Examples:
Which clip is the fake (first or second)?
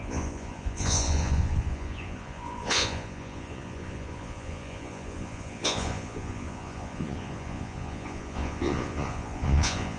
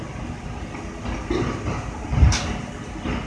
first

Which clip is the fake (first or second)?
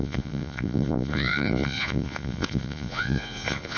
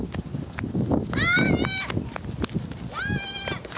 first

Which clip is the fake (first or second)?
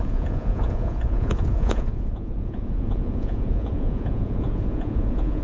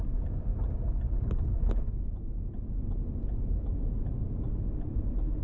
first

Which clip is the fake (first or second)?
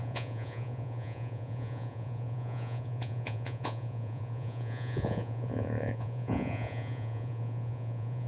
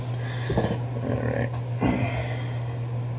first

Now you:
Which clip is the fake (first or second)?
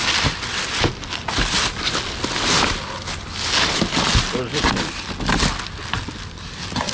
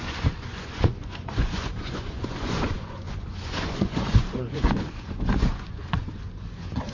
second